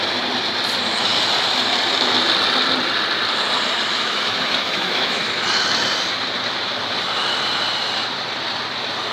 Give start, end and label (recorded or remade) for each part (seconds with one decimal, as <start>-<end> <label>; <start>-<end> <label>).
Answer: 0.0-3.9 recorded; 3.9-5.3 remade; 5.3-9.1 recorded